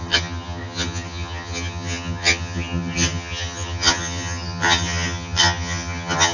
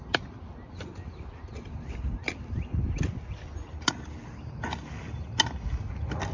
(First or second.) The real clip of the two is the second